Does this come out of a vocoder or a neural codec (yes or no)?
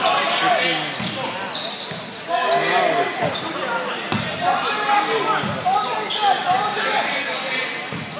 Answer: no